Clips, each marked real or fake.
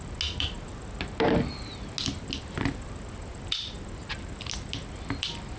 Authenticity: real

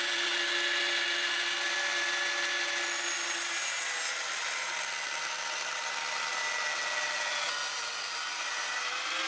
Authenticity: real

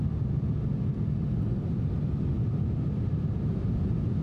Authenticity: real